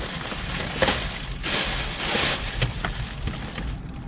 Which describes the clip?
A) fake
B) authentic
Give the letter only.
A